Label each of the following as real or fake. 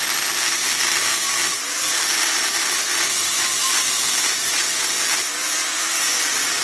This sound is fake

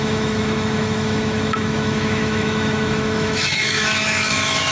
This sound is fake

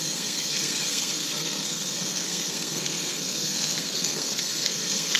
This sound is fake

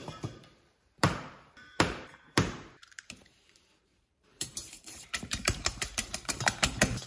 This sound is fake